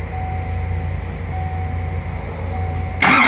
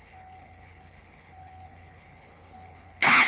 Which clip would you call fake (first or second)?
second